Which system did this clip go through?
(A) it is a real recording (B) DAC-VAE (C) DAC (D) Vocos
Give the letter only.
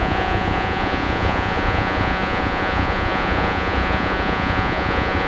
D